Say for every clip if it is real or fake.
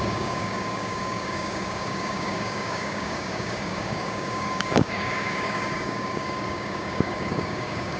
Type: fake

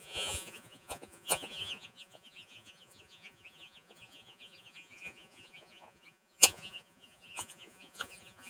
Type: fake